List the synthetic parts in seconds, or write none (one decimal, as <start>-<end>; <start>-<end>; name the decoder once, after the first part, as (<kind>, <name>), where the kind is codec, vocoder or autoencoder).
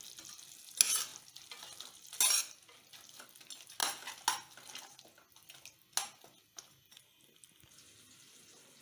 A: none